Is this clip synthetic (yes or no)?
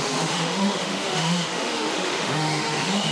yes